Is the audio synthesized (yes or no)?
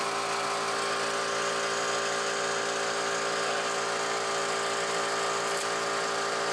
no